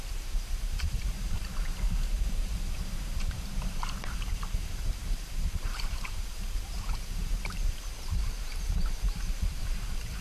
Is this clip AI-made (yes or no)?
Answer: yes